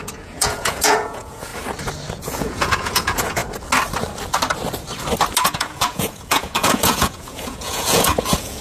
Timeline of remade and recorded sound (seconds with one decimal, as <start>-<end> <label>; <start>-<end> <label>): 0.0-1.5 remade; 1.5-2.1 recorded; 2.1-3.4 remade; 3.4-5.4 recorded; 5.4-8.6 remade